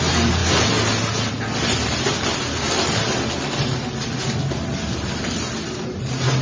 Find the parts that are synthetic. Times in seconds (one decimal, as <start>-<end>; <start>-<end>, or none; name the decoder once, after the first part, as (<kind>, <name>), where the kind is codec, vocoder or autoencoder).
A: none